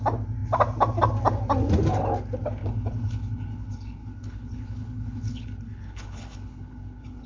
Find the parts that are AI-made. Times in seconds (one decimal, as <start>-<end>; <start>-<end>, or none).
2.6-7.3